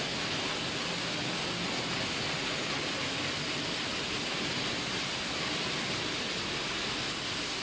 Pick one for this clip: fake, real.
real